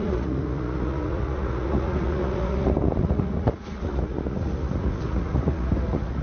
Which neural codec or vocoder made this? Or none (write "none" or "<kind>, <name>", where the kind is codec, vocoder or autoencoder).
vocoder, Vocos